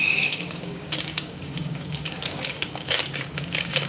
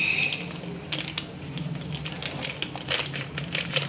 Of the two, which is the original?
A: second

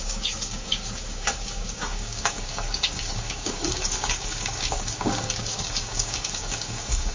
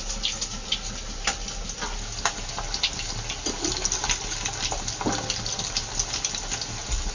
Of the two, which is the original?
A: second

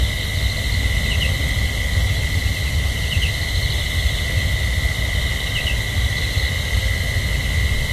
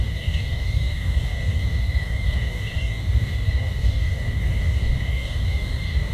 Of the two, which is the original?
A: first